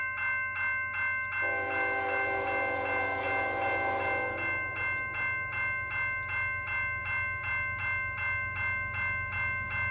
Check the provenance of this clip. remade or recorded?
recorded